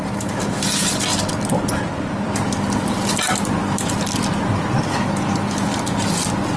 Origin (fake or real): real